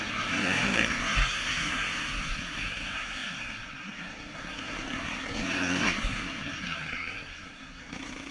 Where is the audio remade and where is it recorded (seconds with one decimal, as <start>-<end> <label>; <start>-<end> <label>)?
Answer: 0.0-8.3 remade